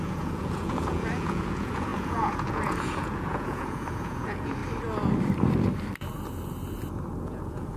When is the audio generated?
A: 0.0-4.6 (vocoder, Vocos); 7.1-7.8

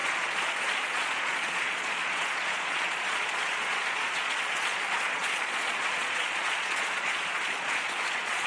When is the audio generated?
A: 0.0-8.5 (vocoder, Vocos)

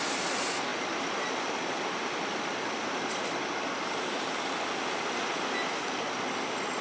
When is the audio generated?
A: none

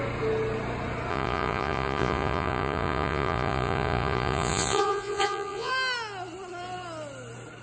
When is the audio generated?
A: 1.1-5.7 (vocoder, Vocos)